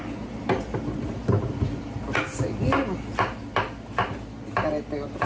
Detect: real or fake real